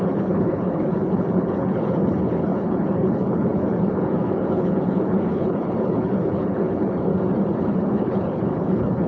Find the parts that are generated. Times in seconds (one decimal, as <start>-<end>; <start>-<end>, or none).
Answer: 0.0-7.1; 7.6-9.1